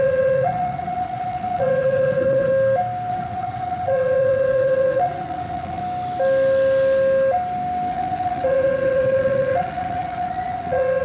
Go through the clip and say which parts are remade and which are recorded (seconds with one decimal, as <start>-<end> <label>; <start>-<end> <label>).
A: 0.0-2.5 remade; 2.5-3.1 recorded; 3.1-5.8 remade; 5.8-7.9 recorded; 7.9-11.0 remade